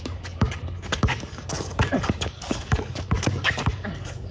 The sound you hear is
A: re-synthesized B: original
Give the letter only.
A